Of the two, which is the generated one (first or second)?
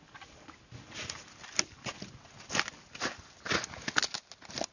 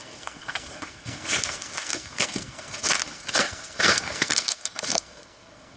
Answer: second